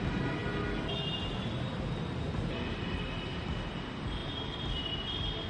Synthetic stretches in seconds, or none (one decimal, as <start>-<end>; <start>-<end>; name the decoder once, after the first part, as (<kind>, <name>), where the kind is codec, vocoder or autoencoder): none